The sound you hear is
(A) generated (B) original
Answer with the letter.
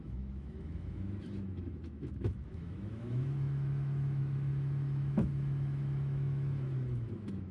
A